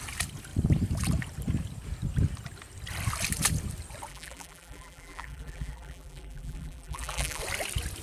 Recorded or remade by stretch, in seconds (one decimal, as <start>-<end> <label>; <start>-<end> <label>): 0.0-4.1 recorded; 4.1-7.4 remade; 7.4-8.0 recorded

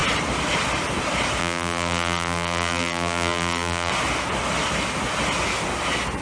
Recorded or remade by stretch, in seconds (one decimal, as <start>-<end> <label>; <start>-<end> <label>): 0.0-1.4 recorded; 1.4-3.9 remade; 3.9-6.2 recorded